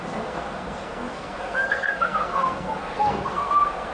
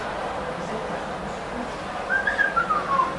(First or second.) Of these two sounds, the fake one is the first